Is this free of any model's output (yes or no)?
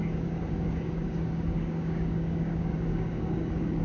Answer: no